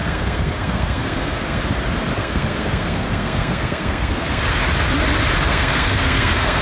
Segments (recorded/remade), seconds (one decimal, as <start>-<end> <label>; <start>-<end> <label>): 0.0-1.6 remade; 1.6-2.2 recorded; 2.2-4.4 remade; 4.4-5.5 recorded; 5.5-6.6 remade